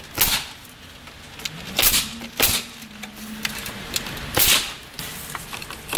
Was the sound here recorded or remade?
recorded